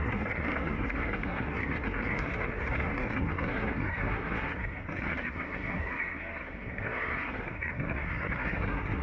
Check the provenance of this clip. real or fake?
fake